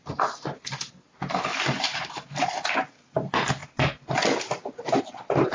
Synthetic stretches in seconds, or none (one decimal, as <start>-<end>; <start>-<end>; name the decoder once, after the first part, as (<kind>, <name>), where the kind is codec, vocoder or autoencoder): 1.5-2.7 (vocoder, BigVGAN v2)